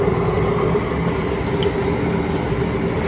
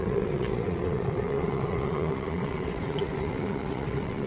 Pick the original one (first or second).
first